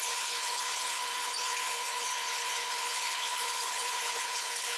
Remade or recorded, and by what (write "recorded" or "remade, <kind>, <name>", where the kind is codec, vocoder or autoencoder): remade, codec, HILCodec